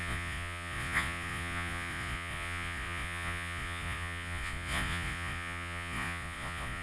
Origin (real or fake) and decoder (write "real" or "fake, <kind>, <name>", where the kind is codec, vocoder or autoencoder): fake, vocoder, Vocos